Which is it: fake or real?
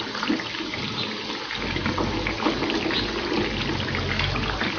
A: real